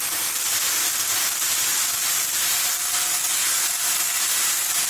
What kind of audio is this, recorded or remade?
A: recorded